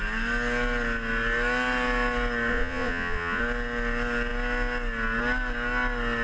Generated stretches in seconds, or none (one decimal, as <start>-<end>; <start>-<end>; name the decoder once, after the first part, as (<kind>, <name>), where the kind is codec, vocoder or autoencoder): 2.5-3.4 (vocoder, Vocos)